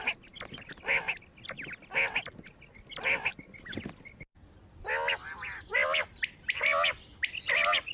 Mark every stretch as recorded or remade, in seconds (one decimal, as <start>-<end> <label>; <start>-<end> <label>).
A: 0.0-7.9 recorded